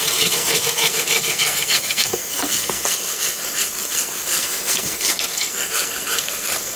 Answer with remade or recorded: remade